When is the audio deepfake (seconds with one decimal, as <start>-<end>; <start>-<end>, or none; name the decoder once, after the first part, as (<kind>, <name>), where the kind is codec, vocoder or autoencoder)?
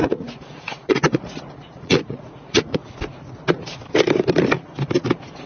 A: 0.0-2.8 (vocoder, Vocos)